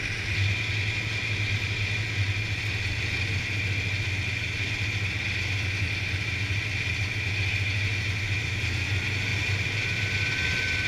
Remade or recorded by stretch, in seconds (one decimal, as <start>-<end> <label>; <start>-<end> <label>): 0.0-9.3 recorded; 9.3-10.9 remade